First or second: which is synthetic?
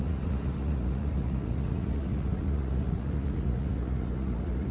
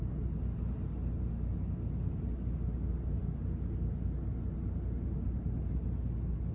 first